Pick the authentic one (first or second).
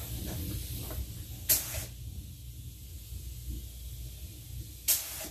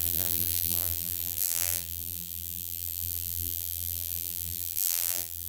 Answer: first